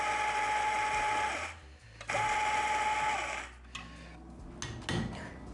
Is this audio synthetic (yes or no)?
no